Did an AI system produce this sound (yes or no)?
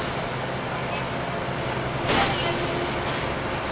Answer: no